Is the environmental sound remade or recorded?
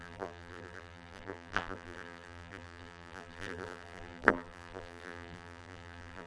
remade